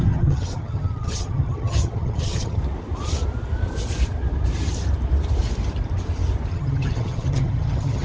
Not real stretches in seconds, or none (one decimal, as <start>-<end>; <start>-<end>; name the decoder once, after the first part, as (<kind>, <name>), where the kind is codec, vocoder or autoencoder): 0.0-2.6 (vocoder, HiFi-GAN); 6.5-8.0